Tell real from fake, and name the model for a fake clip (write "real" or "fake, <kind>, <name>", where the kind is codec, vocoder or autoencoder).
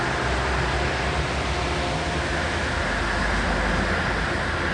real